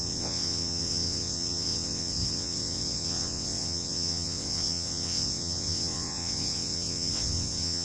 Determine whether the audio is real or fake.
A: fake